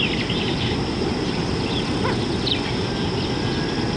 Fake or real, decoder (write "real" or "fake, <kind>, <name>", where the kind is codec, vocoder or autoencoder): real